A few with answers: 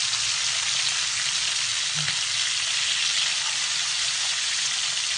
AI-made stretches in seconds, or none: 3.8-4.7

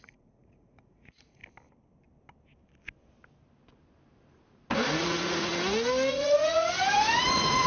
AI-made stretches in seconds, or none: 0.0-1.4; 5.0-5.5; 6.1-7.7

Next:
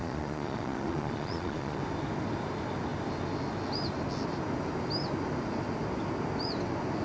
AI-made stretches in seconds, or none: 0.0-1.8

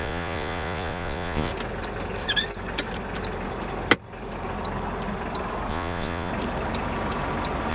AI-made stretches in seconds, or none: 0.0-1.5; 5.7-6.3

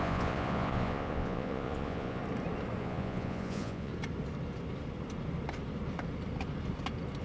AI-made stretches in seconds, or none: 0.0-2.2; 2.8-3.9

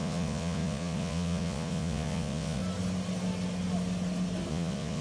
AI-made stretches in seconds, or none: 0.0-2.6; 4.5-5.0

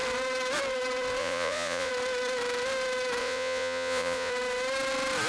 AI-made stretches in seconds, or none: 1.2-1.9; 3.2-4.3

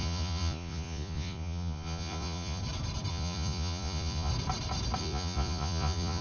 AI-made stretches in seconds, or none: 0.0-2.6; 3.1-4.3; 5.0-6.2